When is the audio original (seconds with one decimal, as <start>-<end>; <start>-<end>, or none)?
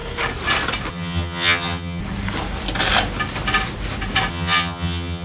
0.0-0.9; 2.0-4.3